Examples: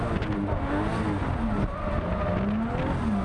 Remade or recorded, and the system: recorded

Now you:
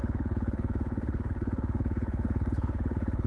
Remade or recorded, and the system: remade, codec, HILCodec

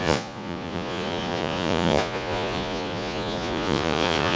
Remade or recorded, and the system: remade, vocoder, Vocos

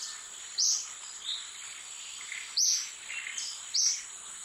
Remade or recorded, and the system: recorded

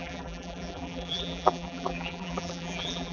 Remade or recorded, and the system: remade, vocoder, BigVGAN v2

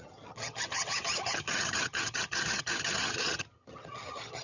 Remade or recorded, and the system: remade, vocoder, HiFi-GAN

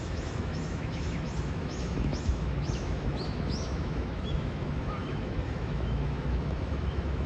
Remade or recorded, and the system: remade, autoencoder, DAC-VAE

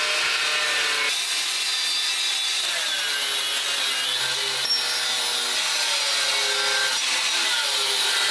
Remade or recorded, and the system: recorded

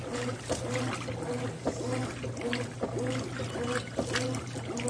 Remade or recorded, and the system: recorded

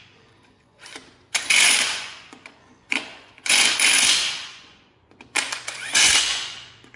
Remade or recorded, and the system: remade, vocoder, Vocos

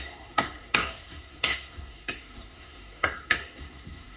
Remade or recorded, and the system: remade, codec, SNAC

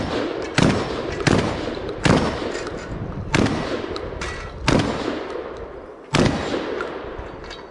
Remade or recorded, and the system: recorded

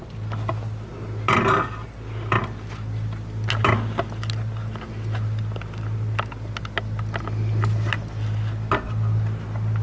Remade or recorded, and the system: recorded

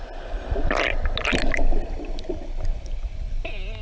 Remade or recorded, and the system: recorded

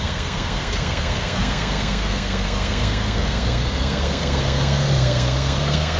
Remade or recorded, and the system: remade, codec, SNAC